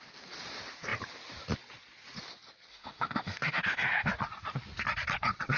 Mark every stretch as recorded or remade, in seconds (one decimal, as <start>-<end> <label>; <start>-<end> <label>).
0.0-2.7 recorded; 2.7-4.1 remade; 4.1-5.6 recorded